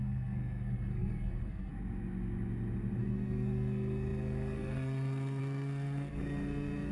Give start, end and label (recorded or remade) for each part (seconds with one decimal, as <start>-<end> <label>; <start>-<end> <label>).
0.0-1.7 remade; 1.7-3.0 recorded; 3.0-6.9 remade